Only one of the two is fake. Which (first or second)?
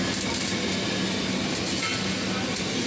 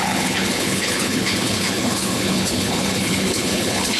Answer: second